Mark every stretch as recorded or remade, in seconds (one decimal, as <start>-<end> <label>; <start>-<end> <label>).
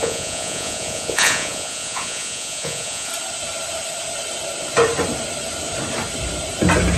0.0-3.1 remade; 3.1-7.0 recorded